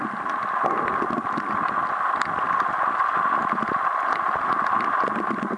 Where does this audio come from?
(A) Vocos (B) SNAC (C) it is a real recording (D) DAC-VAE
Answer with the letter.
C